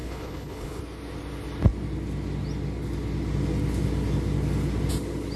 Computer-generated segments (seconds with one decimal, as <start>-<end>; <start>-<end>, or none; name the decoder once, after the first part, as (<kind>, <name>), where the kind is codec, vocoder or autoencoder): 0.0-0.8 (codec, HILCodec)